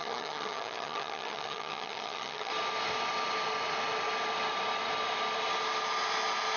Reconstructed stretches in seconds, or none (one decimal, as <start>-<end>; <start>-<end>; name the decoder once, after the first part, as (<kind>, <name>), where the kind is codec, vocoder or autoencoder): 0.0-2.5 (vocoder, HiFi-GAN)